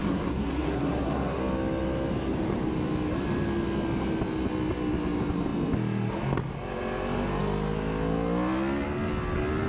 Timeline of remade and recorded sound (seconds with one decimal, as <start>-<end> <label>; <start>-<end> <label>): 0.0-1.4 remade; 1.4-9.7 recorded